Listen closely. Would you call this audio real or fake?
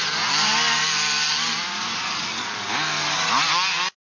real